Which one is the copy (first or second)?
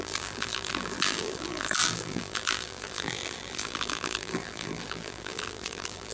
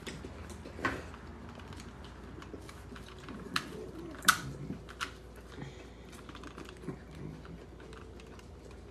first